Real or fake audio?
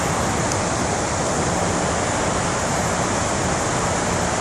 real